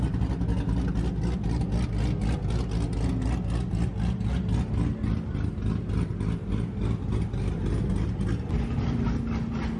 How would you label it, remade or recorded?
recorded